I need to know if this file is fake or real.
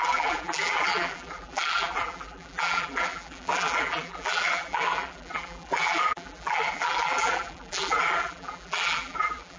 fake